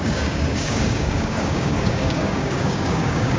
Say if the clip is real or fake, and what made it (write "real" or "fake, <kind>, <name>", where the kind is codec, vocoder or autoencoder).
fake, codec, DAC